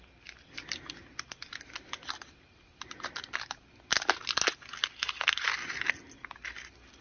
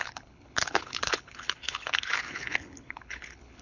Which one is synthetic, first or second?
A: second